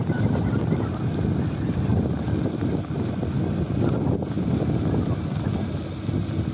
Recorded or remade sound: recorded